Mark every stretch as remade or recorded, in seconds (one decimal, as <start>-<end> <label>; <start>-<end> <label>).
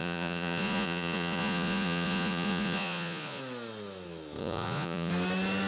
0.0-3.4 remade; 3.4-4.4 recorded; 4.4-5.1 remade; 5.1-5.7 recorded